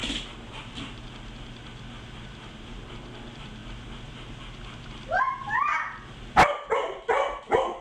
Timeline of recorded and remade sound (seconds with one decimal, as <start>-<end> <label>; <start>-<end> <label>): 0.0-7.8 recorded